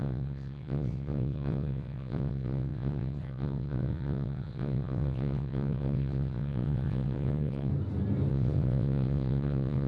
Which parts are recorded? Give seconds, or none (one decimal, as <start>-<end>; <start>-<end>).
7.7-8.3